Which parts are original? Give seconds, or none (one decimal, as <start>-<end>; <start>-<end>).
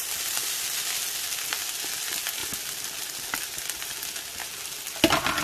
0.0-5.4